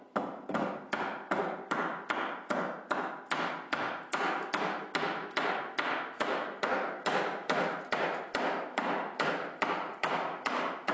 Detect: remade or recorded recorded